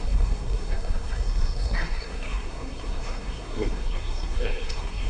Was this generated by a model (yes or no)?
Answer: yes